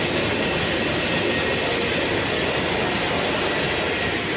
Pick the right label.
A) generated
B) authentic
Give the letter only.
B